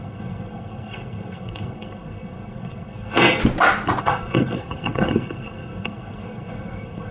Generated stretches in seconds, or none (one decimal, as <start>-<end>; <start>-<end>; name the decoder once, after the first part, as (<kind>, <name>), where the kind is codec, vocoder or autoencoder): 0.0-3.4 (codec, SNAC); 4.0-7.1